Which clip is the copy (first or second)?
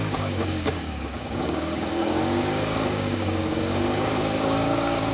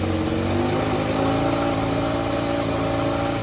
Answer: first